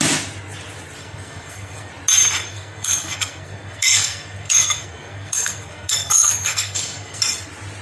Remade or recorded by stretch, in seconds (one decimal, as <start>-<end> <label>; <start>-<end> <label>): 0.0-1.0 recorded; 1.0-1.9 remade; 1.9-2.5 recorded; 2.5-7.2 remade; 7.2-7.8 recorded